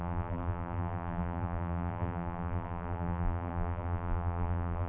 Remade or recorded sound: remade